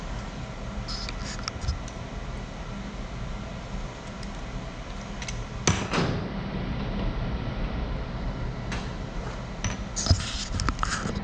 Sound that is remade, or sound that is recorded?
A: recorded